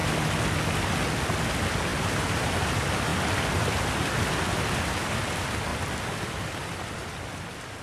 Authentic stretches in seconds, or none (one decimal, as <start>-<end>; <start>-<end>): 0.0-1.9; 2.7-7.8